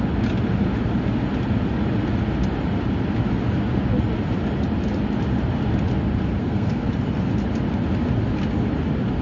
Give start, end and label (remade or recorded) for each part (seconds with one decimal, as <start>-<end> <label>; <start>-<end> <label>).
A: 0.0-6.4 recorded; 6.4-6.9 remade; 6.9-9.2 recorded